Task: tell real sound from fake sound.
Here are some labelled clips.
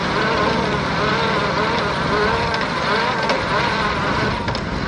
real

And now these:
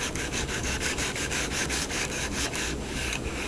fake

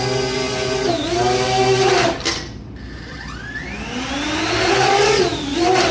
real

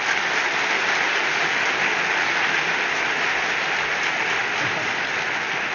real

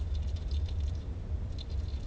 real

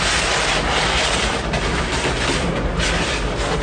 real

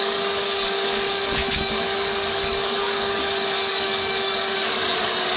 fake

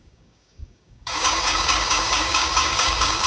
fake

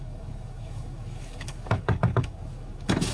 fake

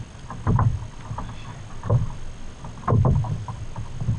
real